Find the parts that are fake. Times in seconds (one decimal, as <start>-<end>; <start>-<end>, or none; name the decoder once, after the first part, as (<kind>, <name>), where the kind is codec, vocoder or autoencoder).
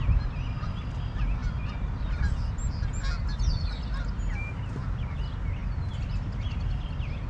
none